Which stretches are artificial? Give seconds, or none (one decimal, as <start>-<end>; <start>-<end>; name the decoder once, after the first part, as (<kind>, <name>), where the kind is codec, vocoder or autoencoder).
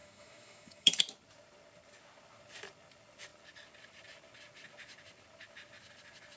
0.0-1.0 (autoencoder, DAC-VAE)